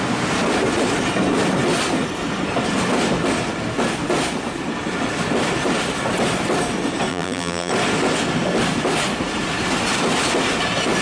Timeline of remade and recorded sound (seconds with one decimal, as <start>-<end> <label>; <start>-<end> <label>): 0.0-7.1 recorded; 7.1-7.7 remade; 7.7-11.0 recorded